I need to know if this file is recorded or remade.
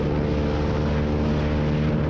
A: recorded